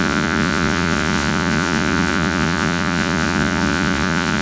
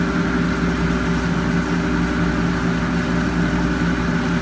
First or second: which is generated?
first